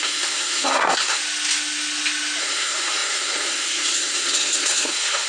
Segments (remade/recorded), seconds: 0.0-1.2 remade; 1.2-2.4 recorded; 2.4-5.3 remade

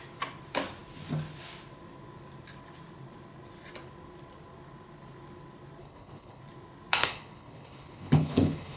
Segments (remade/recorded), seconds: 0.0-5.8 recorded; 5.8-6.4 remade; 6.4-7.0 recorded; 7.0-8.8 remade

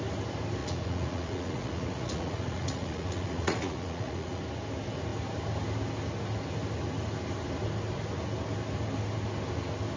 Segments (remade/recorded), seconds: 0.0-0.6 recorded; 0.6-4.4 remade; 4.4-10.0 recorded

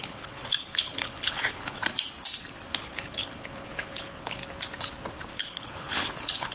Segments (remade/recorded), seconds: 0.0-1.8 remade; 1.8-2.7 recorded; 2.7-4.4 remade; 4.4-5.3 recorded; 5.3-6.5 remade

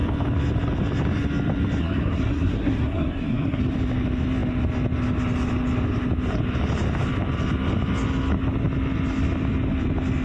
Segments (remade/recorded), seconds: 0.0-1.8 recorded; 1.8-3.6 remade; 3.6-10.2 recorded

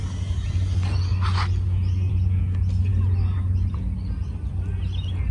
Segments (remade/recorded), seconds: 0.0-5.3 recorded

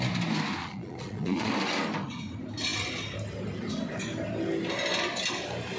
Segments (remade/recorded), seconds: 0.0-0.6 recorded; 0.6-1.5 remade; 1.5-5.8 recorded

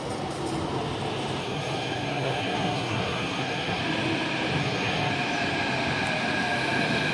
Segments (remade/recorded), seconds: 0.0-1.4 recorded; 1.4-3.8 remade; 3.8-4.6 recorded; 4.6-5.1 remade; 5.1-7.1 recorded